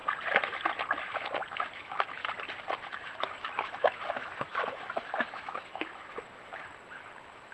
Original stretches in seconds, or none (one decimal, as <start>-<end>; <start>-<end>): 0.0-1.6; 2.2-2.8